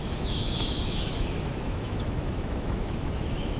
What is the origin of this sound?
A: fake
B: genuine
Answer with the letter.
A